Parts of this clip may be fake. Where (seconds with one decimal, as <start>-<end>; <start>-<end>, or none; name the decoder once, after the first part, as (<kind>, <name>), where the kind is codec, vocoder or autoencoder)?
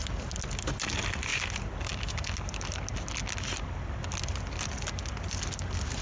none